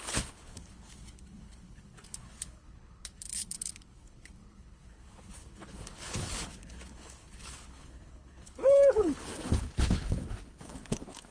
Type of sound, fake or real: fake